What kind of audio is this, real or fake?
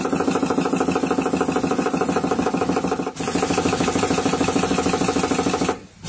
real